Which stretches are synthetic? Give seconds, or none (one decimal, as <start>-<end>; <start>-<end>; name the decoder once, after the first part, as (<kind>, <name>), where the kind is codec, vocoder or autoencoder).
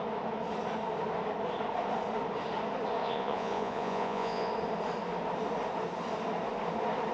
3.0-4.5 (vocoder, Vocos)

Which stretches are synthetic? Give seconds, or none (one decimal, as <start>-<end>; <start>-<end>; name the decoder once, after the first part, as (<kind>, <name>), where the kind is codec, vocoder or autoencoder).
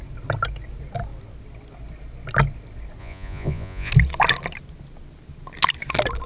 3.0-3.9 (vocoder, Vocos)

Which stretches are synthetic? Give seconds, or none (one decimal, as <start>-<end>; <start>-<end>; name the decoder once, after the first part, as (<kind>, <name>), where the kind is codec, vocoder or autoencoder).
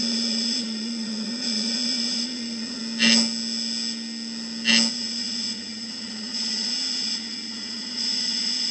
0.0-2.8 (vocoder, Vocos); 4.9-8.7